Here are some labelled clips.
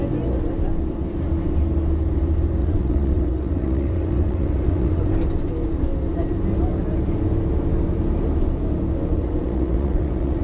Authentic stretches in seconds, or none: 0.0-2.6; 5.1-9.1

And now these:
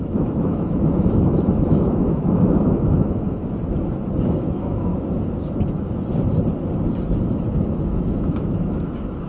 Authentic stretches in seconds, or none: 3.4-4.3; 4.9-7.3

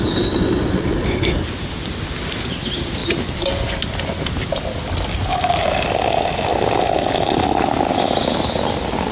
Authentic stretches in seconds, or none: 0.0-9.1